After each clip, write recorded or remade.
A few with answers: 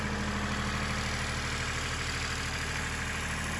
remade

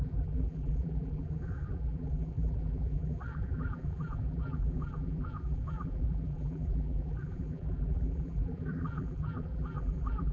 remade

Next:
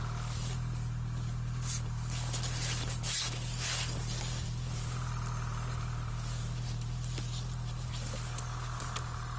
recorded